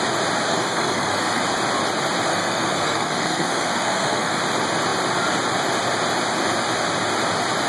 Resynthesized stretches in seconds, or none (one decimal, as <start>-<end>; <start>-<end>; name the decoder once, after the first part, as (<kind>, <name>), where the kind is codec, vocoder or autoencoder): 0.5-1.4 (codec, SNAC); 2.3-4.4